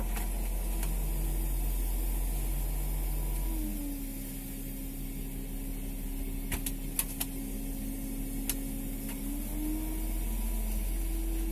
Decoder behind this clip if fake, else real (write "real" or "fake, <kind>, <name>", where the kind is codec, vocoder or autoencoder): real